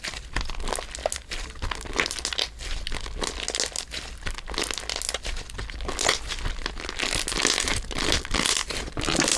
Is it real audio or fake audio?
real